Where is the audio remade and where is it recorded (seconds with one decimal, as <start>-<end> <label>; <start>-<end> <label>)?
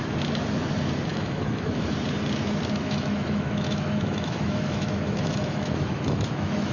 0.0-1.1 recorded; 1.1-1.9 remade; 1.9-2.8 recorded; 2.8-6.7 remade